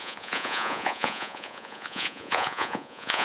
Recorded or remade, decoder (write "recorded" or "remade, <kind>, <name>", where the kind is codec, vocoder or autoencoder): remade, vocoder, Vocos